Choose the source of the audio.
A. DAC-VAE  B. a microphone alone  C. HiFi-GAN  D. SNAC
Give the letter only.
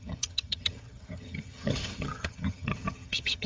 C